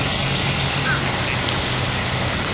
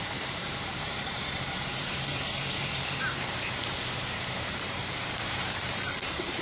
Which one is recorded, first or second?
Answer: first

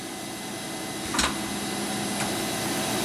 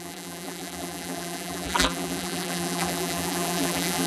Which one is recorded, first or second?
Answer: first